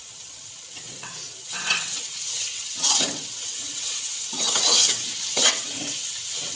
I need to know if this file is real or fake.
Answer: fake